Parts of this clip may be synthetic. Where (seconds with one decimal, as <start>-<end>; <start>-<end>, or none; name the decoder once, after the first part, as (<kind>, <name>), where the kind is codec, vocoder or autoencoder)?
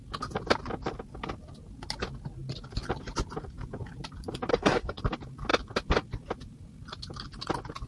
4.5-5.0 (codec, SNAC)